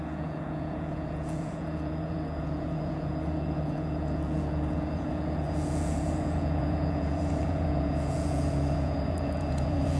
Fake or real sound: fake